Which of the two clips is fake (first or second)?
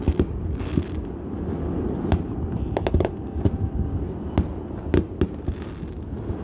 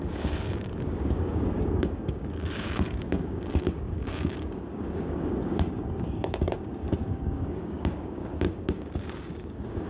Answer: second